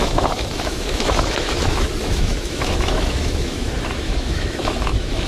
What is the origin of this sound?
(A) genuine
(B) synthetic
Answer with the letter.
B